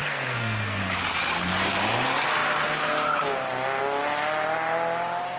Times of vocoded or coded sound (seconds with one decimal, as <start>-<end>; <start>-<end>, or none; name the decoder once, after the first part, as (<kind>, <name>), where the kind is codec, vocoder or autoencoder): 0.0-0.8 (codec, SNAC)